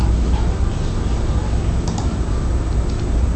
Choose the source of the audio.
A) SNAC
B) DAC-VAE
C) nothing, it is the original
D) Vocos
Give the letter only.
C